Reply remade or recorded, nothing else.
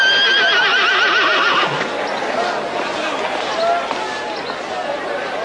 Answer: recorded